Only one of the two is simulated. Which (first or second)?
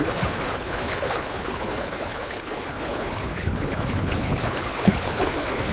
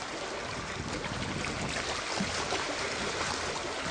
first